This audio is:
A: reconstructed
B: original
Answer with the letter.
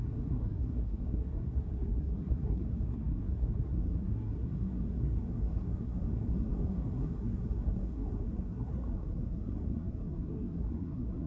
A